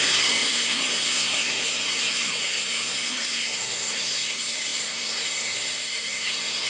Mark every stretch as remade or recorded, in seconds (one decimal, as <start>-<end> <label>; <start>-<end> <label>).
0.0-6.7 remade